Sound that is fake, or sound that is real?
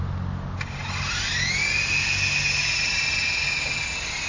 real